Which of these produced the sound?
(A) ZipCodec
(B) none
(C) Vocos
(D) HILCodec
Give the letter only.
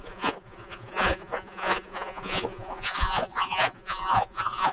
C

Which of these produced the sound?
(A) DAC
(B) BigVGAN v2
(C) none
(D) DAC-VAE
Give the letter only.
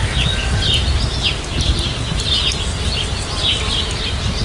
C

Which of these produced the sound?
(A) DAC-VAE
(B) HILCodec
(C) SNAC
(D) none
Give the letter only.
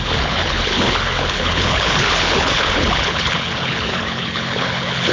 B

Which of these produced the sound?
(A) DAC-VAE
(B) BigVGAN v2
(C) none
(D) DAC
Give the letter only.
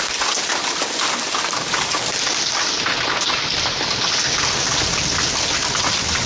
C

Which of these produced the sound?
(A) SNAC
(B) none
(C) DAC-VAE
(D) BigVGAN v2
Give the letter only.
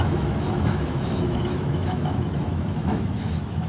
C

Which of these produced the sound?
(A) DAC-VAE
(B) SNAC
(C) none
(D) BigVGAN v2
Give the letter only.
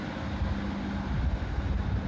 C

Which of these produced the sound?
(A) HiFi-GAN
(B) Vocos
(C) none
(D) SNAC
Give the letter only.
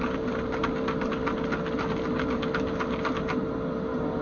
C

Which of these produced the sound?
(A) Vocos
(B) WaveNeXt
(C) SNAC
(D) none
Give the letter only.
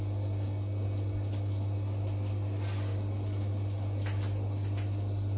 D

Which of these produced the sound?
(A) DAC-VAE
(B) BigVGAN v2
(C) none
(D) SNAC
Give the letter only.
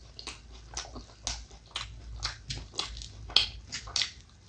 C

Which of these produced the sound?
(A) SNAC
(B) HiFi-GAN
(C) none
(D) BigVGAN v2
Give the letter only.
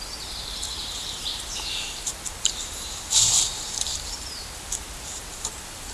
D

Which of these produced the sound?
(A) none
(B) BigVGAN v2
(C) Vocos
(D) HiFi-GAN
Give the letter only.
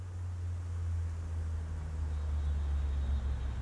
A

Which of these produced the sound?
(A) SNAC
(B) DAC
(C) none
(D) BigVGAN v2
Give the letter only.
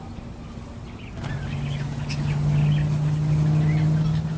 C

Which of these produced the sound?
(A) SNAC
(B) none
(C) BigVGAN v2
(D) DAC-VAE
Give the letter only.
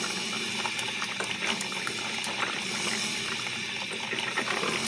B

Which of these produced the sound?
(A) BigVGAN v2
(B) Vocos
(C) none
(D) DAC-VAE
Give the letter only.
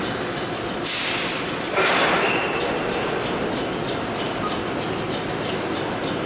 C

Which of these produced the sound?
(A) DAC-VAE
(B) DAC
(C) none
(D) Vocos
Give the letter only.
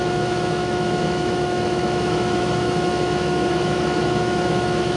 A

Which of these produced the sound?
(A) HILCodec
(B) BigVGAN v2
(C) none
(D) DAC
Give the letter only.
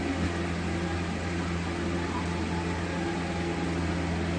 C